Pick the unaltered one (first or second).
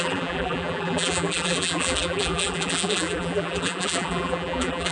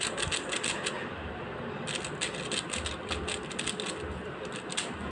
second